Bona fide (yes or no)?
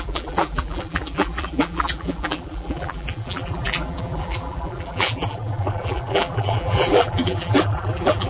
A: no